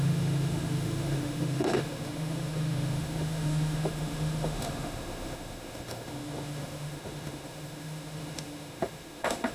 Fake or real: fake